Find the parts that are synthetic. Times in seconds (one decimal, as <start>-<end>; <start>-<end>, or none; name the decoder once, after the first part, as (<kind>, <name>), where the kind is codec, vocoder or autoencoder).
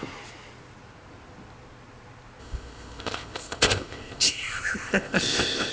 2.4-5.7 (codec, ZipCodec)